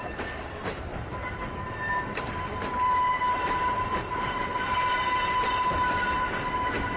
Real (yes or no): no